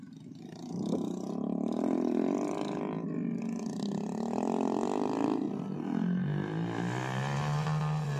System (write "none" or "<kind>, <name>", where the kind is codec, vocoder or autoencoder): none